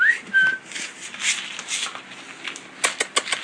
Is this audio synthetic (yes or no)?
no